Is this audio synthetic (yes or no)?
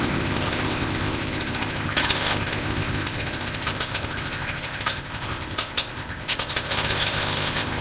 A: yes